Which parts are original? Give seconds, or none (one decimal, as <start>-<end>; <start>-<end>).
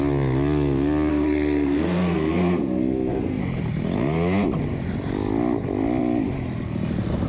0.0-1.1; 3.4-7.3